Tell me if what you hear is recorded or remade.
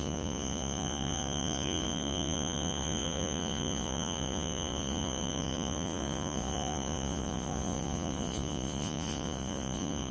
remade